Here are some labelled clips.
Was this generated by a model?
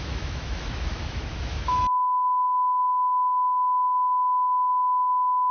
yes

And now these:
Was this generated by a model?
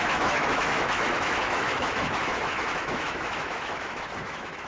yes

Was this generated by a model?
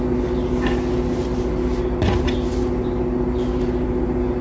no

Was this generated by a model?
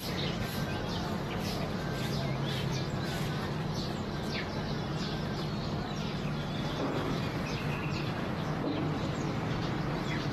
no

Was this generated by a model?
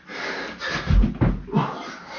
no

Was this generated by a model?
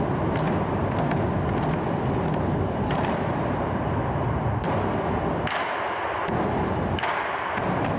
no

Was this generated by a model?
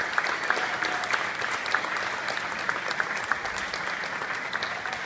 no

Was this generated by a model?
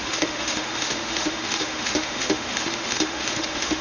yes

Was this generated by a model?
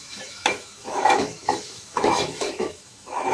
yes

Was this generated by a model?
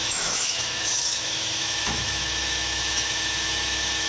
yes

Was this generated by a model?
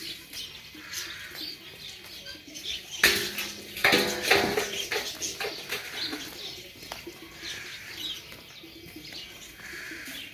no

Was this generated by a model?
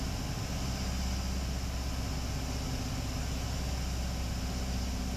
no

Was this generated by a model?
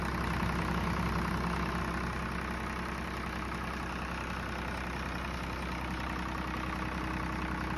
no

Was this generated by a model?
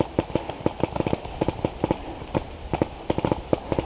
no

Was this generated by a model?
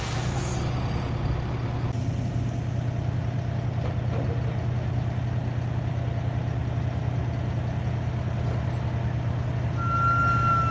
no